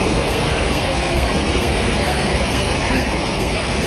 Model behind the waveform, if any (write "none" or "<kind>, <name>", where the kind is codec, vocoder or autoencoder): codec, SNAC